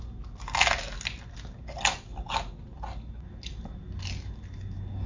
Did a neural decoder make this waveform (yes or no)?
no